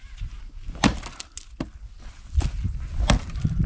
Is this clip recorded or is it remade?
recorded